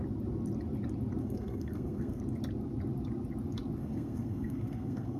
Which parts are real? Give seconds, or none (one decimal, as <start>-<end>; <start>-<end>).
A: 0.0-1.2; 2.2-3.8